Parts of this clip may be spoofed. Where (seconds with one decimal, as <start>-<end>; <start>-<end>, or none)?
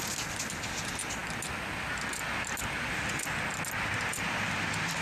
none